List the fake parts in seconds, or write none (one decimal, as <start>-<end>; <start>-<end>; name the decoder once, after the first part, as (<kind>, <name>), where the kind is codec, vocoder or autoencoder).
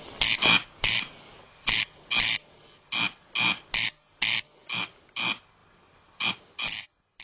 none